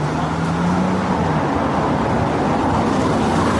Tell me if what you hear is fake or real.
real